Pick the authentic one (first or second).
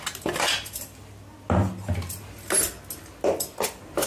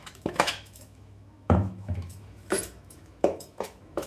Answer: first